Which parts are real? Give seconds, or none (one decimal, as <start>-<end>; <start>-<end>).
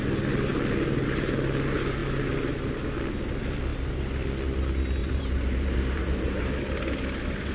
0.0-5.0; 6.6-7.5